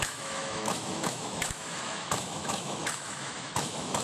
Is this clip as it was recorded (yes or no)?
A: no